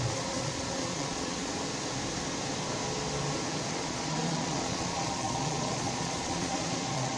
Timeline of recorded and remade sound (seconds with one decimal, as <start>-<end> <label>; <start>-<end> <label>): 0.0-1.5 remade; 1.5-3.7 recorded; 3.7-7.2 remade